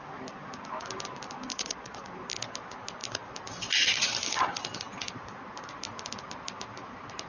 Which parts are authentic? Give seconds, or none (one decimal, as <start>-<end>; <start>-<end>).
0.0-1.5; 2.1-7.3